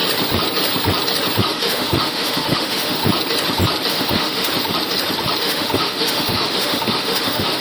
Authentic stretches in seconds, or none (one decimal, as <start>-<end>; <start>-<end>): 0.0-1.4; 3.0-3.9; 4.5-5.4